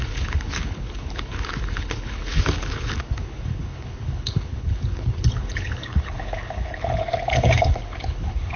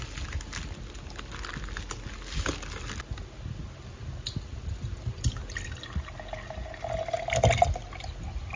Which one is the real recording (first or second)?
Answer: second